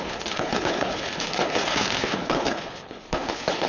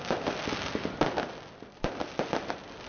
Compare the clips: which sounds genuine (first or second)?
second